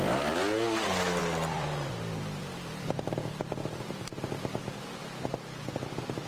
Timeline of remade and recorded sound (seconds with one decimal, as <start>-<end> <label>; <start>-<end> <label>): 0.0-1.2 recorded; 1.2-5.0 remade; 5.0-6.3 recorded